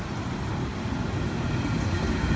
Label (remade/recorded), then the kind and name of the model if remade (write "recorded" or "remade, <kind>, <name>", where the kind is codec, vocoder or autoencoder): recorded